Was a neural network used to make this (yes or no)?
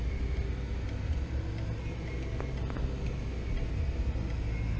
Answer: no